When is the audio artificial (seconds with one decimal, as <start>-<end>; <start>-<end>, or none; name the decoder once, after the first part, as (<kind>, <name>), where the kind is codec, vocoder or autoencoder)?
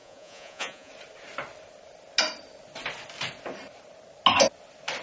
0.0-0.9 (vocoder, Vocos)